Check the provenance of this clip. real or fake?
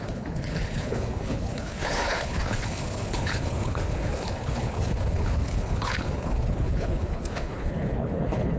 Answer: fake